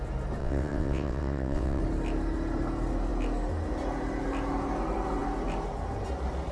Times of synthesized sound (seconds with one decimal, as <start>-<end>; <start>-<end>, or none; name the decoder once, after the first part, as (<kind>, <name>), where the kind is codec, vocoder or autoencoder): 0.4-1.8 (vocoder, WaveNeXt)

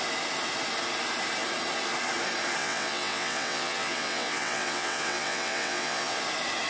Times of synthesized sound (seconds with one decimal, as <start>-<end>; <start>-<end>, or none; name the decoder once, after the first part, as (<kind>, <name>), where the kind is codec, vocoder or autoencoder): 2.6-6.2 (vocoder, WaveNeXt)

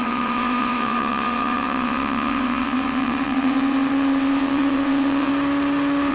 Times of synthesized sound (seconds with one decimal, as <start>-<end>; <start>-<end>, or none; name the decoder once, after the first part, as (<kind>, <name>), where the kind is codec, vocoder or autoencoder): 0.0-5.3 (vocoder, WaveNeXt)

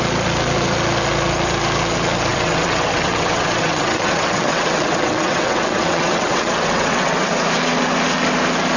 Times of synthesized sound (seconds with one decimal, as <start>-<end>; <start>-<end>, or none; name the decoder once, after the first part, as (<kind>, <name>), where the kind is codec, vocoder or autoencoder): 2.3-7.3 (vocoder, WaveNeXt)